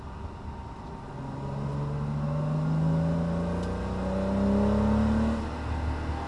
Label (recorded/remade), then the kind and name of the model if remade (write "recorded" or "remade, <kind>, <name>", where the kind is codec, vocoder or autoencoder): recorded